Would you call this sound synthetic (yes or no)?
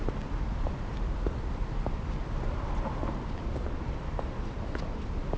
no